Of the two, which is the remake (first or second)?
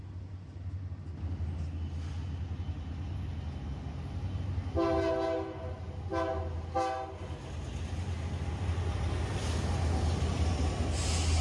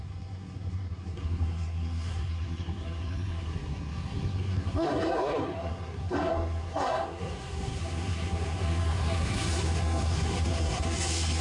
second